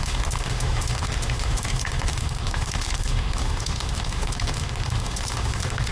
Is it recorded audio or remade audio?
remade